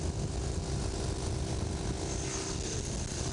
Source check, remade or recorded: recorded